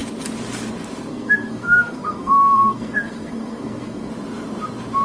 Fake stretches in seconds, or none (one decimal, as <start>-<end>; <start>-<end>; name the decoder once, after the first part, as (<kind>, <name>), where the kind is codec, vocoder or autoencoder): 1.1-4.1 (codec, SNAC)